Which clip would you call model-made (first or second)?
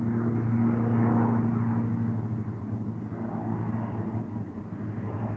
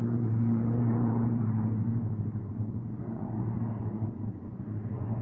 second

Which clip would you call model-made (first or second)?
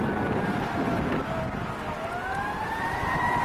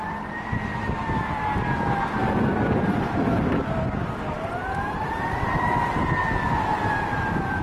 second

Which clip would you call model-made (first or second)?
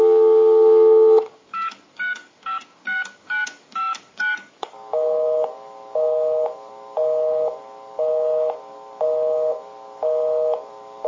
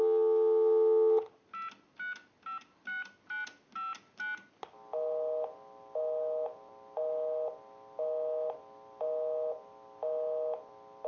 first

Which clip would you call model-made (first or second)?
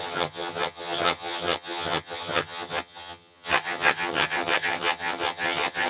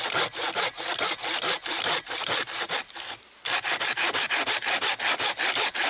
first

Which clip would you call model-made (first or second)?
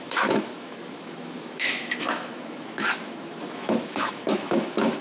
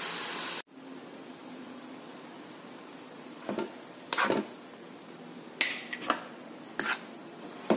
first